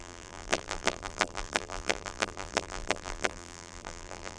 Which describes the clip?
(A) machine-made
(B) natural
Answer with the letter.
A